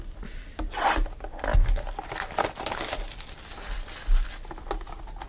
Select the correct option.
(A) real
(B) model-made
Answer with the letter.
A